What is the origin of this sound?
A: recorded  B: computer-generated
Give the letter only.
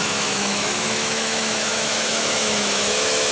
B